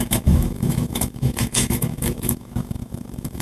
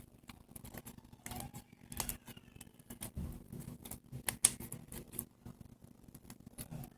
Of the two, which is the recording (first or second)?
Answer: second